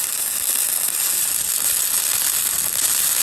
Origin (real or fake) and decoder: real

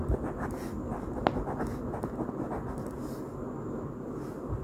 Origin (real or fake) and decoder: real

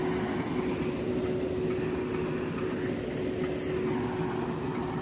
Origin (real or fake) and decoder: real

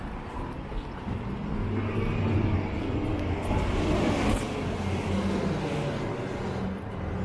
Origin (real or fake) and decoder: real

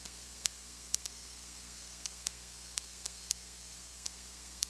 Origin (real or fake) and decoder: fake, codec, SNAC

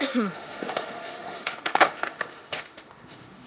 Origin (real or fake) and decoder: fake, autoencoder, DAC-VAE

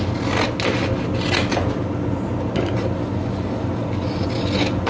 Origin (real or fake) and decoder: real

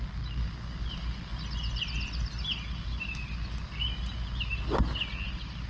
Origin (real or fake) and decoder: real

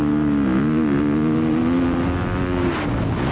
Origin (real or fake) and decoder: real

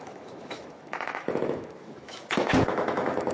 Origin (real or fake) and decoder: fake, autoencoder, DAC-VAE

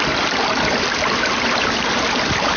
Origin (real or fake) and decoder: real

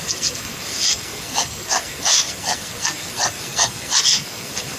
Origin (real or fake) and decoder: fake, codec, SNAC